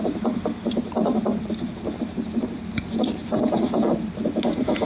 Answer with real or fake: real